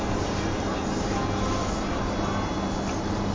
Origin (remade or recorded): recorded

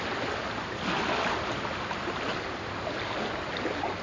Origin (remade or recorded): recorded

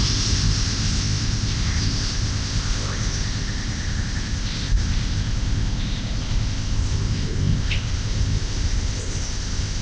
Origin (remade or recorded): remade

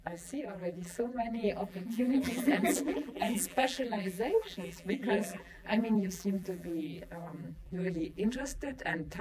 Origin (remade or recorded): remade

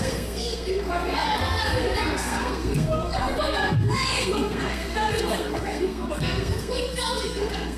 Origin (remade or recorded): remade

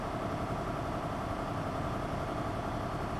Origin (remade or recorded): recorded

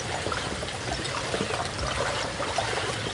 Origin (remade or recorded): recorded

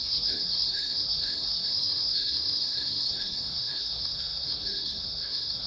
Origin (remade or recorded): remade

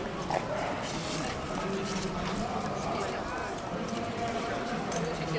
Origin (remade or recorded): recorded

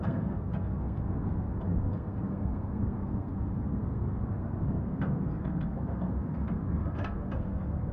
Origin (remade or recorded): remade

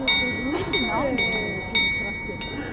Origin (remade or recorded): recorded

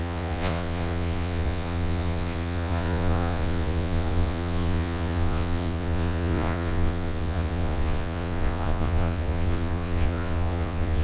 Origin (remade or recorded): remade